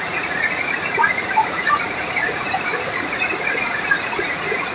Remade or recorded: remade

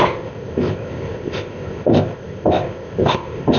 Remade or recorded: remade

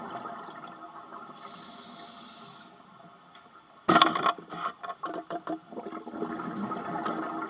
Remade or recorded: recorded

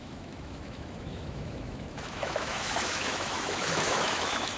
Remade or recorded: remade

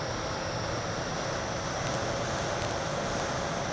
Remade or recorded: recorded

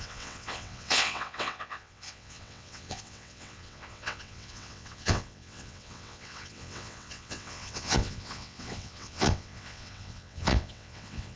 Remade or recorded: remade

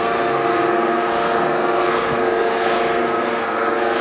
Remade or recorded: remade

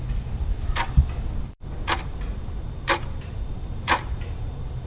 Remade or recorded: remade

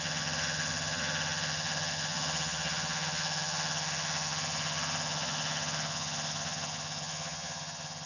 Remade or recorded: remade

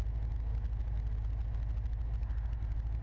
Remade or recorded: recorded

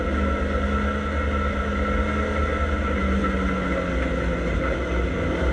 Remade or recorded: recorded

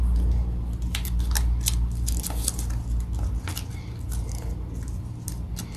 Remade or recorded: recorded